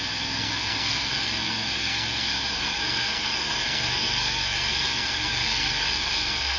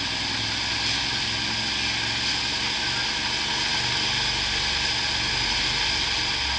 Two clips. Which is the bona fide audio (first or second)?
second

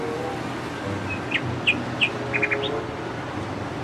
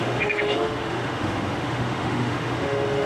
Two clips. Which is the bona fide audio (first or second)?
first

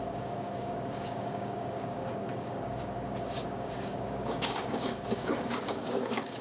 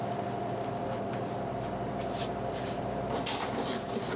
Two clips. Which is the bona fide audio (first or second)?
second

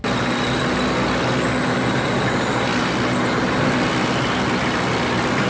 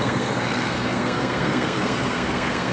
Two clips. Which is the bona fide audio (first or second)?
first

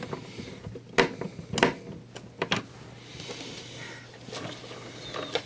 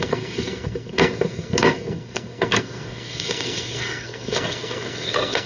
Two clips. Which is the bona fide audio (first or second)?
first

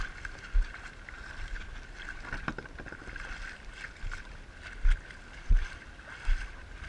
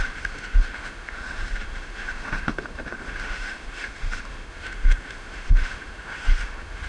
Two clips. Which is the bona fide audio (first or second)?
first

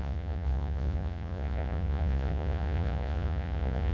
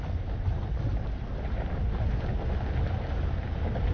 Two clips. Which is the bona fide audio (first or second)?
second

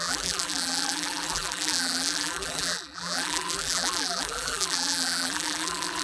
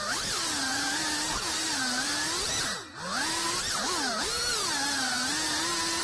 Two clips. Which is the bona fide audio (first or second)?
second